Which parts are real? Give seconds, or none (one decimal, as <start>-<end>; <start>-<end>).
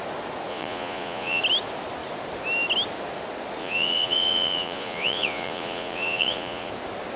0.0-0.5; 1.4-3.6; 6.7-7.2